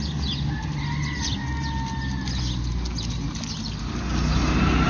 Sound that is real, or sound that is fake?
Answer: real